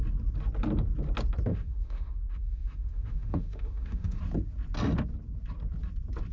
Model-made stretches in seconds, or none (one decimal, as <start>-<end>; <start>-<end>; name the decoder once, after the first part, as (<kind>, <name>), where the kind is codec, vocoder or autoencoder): 1.5-4.2 (autoencoder, DAC-VAE)